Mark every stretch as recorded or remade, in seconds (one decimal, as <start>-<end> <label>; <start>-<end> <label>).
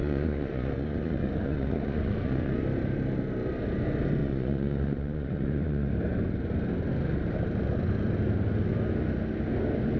0.0-2.6 remade; 2.6-4.2 recorded; 4.2-5.9 remade; 5.9-10.0 recorded